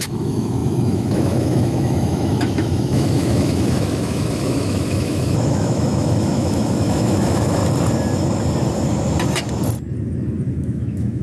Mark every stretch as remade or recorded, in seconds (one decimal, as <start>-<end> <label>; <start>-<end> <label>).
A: 0.0-7.6 remade; 7.6-10.5 recorded; 10.5-11.2 remade